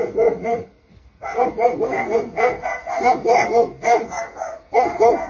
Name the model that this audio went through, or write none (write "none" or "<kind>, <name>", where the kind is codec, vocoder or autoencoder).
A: codec, SNAC